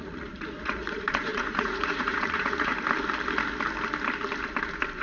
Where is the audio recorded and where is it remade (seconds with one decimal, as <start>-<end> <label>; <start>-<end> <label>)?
0.0-2.7 remade; 2.7-5.0 recorded